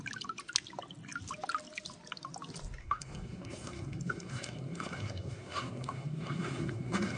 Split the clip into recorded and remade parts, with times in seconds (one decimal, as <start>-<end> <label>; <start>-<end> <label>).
0.0-2.8 recorded; 2.8-7.2 remade